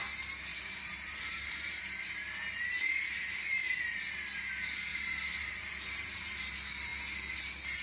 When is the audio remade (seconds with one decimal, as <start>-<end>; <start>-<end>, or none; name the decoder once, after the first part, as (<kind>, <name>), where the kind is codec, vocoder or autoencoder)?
0.5-1.8 (vocoder, BigVGAN v2); 4.9-6.3